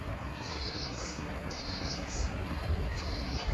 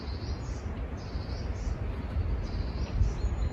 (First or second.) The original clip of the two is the second